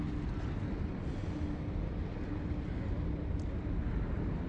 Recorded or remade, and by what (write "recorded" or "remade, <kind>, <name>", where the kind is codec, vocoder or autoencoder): recorded